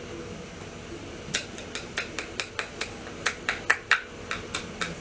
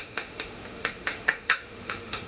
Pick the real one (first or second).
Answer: first